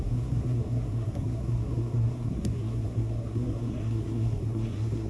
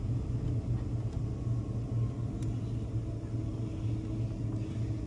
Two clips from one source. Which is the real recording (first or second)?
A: second